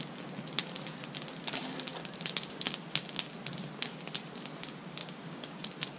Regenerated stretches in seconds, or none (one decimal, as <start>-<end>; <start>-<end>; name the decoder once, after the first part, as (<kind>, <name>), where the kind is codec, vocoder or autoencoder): 5.0-5.6 (codec, DAC)